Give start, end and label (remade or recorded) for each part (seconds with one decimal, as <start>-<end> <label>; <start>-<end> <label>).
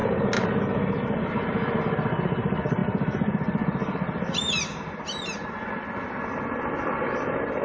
0.0-7.6 recorded